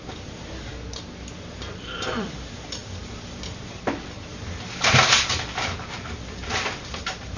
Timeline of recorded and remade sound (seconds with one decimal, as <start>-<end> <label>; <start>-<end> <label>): 0.0-2.8 remade; 2.8-5.4 recorded; 5.4-7.4 remade